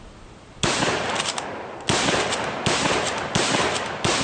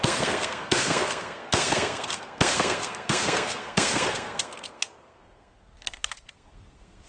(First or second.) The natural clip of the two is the first